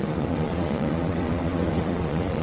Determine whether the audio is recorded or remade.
remade